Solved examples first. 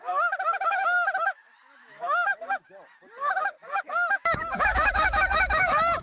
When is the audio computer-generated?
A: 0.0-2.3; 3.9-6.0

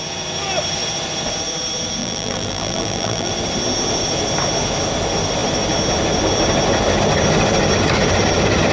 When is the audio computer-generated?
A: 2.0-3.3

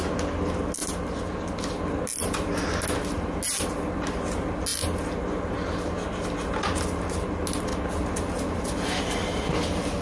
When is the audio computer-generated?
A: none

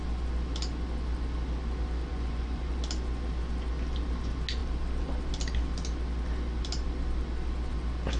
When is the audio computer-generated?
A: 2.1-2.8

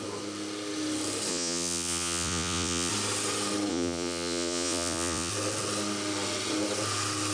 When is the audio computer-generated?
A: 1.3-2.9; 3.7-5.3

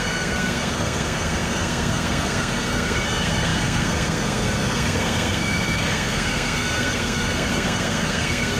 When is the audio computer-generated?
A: 0.0-8.6

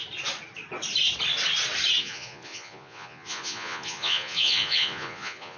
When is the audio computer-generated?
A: 2.0-5.6

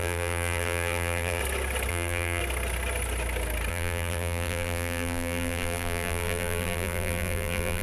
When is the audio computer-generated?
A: 0.0-1.4; 1.9-2.4; 3.7-7.8